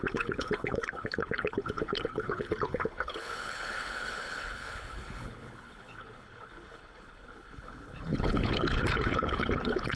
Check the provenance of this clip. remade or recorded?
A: remade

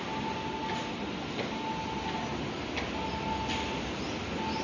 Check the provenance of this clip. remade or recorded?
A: recorded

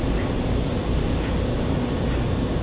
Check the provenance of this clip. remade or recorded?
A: recorded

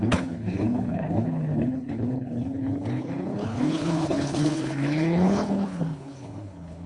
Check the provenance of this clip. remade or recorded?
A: remade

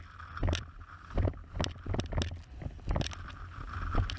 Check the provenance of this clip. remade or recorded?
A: recorded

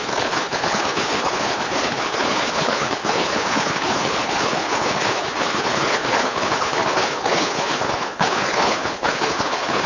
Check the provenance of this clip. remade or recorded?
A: remade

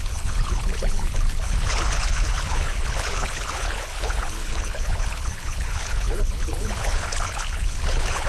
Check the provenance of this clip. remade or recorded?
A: remade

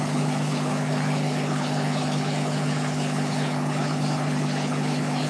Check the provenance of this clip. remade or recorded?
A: remade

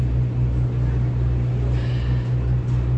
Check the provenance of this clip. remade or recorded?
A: recorded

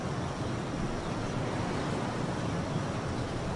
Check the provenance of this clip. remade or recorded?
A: recorded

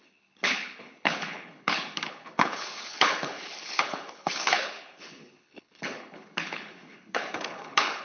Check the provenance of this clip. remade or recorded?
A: remade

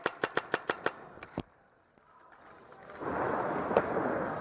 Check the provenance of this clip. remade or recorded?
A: recorded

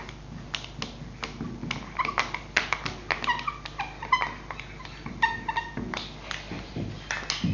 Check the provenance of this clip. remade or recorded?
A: recorded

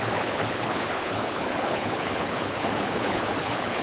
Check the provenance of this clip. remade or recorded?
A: remade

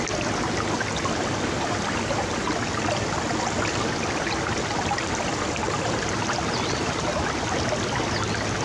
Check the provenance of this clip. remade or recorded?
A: recorded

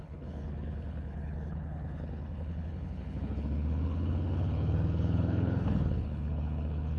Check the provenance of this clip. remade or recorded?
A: remade